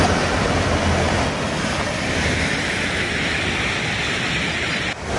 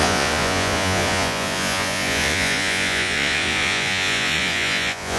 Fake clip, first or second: second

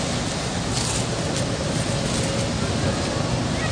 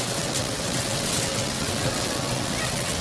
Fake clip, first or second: second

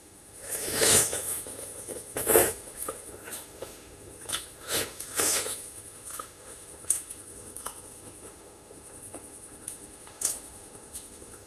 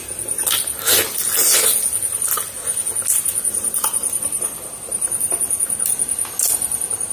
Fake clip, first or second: first